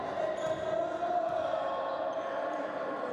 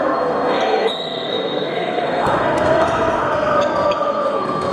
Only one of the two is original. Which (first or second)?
first